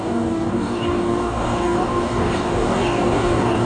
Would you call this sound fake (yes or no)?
yes